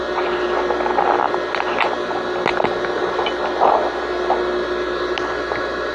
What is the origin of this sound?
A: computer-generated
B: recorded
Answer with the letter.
B